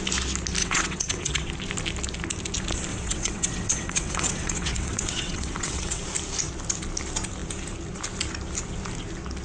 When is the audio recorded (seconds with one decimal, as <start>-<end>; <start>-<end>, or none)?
0.0-0.6; 1.5-2.9; 6.0-9.4

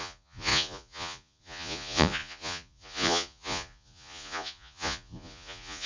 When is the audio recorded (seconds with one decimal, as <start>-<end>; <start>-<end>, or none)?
none